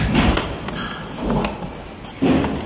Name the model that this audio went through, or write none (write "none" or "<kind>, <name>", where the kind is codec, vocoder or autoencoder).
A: none